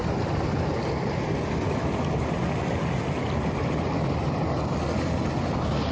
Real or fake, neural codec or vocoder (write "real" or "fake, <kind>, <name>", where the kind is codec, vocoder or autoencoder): real